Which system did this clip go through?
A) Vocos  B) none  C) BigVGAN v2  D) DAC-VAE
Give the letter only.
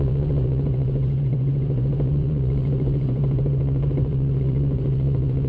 A